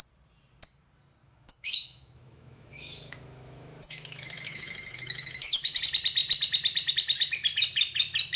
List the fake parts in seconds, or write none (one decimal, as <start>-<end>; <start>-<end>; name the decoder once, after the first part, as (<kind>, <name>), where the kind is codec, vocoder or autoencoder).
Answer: 1.2-5.8 (autoencoder, DAC-VAE)